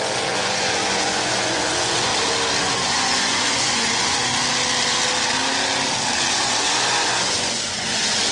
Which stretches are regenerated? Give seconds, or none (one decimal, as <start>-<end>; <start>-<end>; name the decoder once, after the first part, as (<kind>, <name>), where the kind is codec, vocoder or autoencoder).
0.0-2.1 (vocoder, Vocos); 2.6-4.3; 6.3-8.3